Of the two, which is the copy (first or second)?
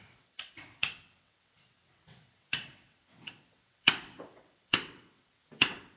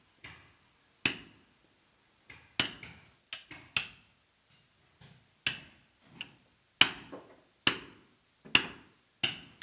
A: first